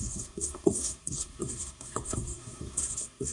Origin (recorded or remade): remade